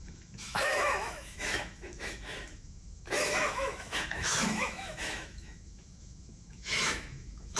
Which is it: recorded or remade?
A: remade